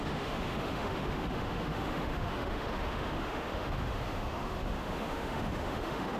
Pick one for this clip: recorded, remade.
remade